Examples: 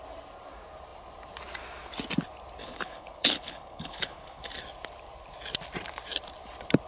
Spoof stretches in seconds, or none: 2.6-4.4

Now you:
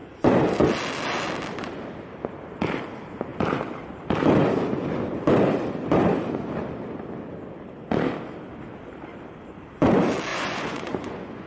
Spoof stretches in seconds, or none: 10.3-11.5